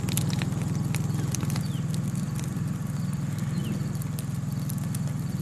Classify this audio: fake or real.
real